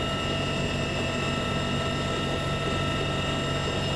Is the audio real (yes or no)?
yes